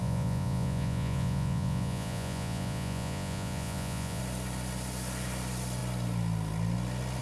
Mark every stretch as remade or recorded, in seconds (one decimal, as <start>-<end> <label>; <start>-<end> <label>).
0.0-4.2 remade; 4.2-7.2 recorded